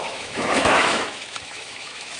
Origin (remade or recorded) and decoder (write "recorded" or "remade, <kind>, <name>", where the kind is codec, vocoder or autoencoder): remade, autoencoder, DAC-VAE